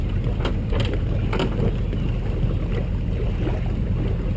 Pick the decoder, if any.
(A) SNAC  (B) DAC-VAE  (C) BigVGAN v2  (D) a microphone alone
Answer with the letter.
D